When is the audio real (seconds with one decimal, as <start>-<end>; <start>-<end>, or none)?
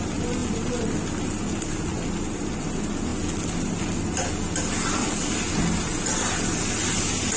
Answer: 0.0-7.4